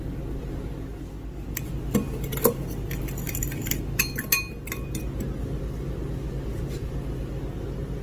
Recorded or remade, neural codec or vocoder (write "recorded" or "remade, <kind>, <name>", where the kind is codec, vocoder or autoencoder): recorded